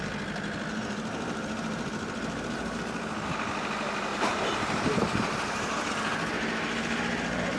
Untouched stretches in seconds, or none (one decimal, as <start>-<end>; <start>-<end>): 0.0-0.7; 2.8-4.1; 5.9-7.6